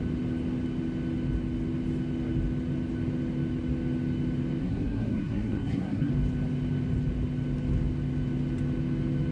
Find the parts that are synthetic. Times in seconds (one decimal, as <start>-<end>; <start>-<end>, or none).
4.6-6.1

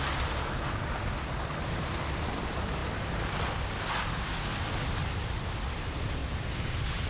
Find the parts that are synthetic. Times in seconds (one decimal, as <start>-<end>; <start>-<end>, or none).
6.2-7.1

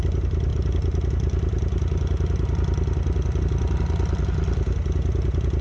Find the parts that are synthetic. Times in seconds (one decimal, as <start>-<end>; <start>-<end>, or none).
none

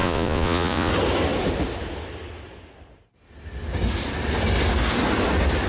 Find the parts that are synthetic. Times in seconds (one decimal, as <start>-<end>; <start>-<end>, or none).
0.0-0.9